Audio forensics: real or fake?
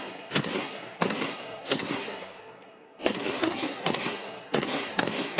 fake